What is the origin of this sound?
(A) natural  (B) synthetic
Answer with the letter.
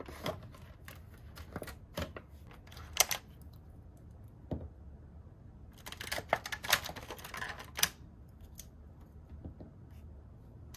A